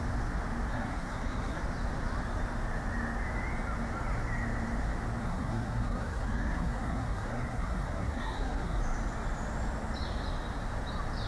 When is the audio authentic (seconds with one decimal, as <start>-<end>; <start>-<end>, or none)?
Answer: 0.0-0.7; 1.6-5.2; 8.8-11.3

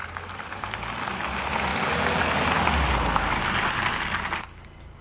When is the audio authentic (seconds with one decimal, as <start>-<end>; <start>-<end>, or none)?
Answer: 0.0-5.0

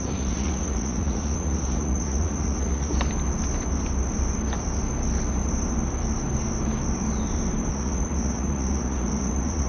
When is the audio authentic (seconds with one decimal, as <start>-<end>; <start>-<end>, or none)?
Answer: 2.9-7.7

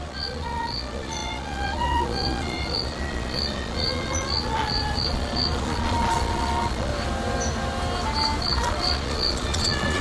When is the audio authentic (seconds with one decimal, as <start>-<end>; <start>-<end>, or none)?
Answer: 6.9-8.4